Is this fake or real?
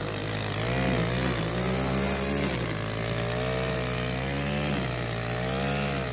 real